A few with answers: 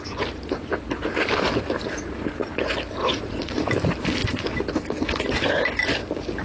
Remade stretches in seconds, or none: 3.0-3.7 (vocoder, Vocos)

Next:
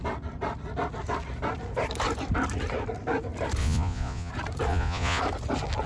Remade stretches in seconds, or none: 3.6-4.3 (vocoder, Vocos); 4.7-5.2

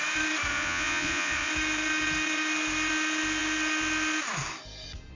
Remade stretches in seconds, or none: 0.5-1.5 (vocoder, Vocos)

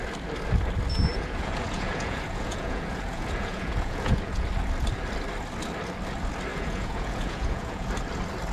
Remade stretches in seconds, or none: 1.1-4.5 (vocoder, Vocos); 6.5-7.9

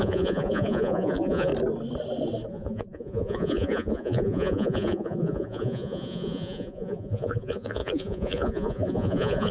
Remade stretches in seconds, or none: 0.0-1.5 (vocoder, Vocos); 2.5-9.5

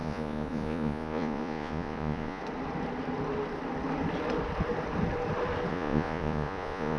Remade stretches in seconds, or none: 0.0-2.4 (vocoder, Vocos); 5.7-7.0

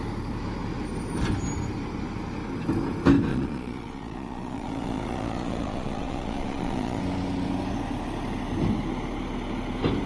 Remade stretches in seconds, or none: 3.3-7.0 (vocoder, Vocos)